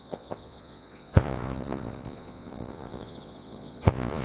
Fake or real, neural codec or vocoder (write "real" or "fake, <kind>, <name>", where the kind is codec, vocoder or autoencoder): fake, vocoder, Vocos